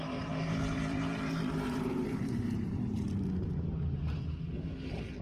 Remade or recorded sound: remade